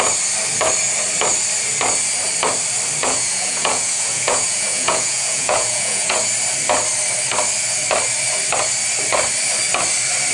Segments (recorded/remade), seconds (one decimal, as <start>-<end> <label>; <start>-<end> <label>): 0.0-3.0 recorded; 3.0-6.2 remade; 6.2-10.3 recorded